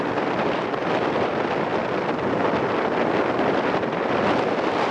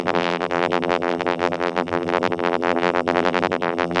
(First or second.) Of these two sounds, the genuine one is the first